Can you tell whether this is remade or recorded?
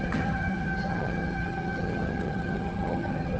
remade